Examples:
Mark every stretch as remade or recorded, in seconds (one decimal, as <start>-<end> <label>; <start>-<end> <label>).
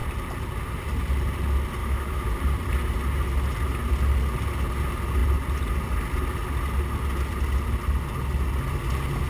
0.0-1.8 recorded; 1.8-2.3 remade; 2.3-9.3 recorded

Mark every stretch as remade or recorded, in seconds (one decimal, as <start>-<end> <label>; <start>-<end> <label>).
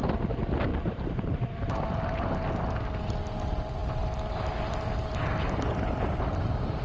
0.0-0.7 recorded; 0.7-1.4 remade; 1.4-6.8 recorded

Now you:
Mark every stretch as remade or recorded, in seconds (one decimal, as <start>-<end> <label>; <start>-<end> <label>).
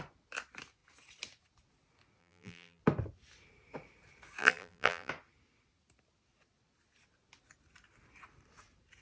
0.0-2.2 recorded; 2.2-2.8 remade; 2.8-4.4 recorded; 4.4-5.1 remade; 5.1-9.0 recorded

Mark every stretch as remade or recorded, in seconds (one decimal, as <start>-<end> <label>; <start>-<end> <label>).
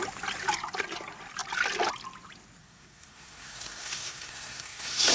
0.0-2.6 recorded; 2.6-5.1 remade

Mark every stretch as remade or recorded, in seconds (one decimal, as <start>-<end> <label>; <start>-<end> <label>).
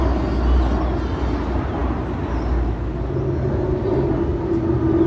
0.0-5.1 recorded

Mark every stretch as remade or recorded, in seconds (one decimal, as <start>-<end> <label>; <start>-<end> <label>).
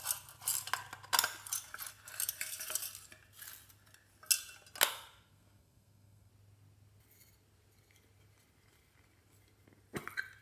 0.0-4.9 recorded; 4.9-6.3 remade; 6.3-10.4 recorded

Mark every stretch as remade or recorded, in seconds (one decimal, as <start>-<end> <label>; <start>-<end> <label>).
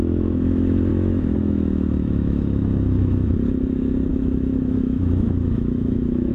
0.0-0.9 recorded; 0.9-3.3 remade; 3.3-4.1 recorded; 4.1-6.3 remade